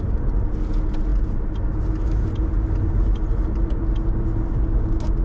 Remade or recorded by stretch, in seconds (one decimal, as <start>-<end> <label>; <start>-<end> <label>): 0.0-5.2 recorded